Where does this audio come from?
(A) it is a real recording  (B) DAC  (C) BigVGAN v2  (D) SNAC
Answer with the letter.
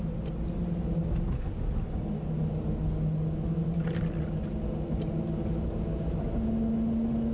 A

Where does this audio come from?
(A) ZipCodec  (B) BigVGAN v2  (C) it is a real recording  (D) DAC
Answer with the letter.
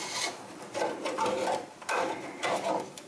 C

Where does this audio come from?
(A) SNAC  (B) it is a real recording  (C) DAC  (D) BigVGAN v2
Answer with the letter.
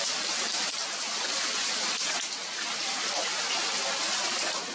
B